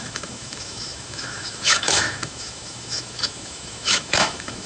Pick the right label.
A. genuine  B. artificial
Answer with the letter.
B